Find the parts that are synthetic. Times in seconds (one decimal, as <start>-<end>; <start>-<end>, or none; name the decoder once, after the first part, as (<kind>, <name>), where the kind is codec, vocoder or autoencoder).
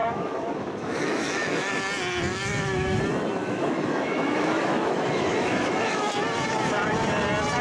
0.0-1.8 (autoencoder, DAC-VAE); 2.3-3.0; 3.4-6.1